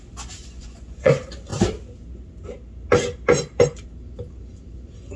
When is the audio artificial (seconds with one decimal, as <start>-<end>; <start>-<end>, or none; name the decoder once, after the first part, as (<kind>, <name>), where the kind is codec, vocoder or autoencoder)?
0.4-1.1 (vocoder, Vocos)